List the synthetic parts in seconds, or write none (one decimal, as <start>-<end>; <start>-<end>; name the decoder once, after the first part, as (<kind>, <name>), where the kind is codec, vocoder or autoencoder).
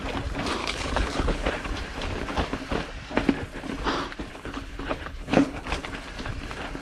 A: 0.6-1.5 (codec, HILCodec); 4.3-5.7